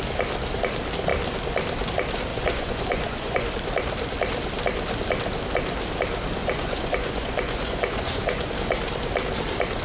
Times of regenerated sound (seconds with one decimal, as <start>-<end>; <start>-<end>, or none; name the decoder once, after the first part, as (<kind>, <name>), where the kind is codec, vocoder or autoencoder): 2.3-3.5 (vocoder, Vocos); 6.4-8.5